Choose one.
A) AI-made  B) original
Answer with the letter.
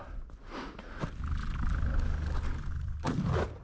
B